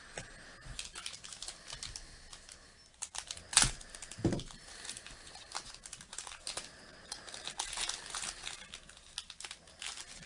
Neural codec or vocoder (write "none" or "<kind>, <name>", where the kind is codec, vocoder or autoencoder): none